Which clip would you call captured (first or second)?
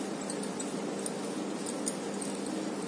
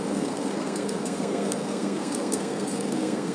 first